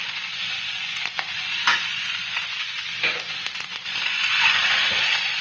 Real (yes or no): no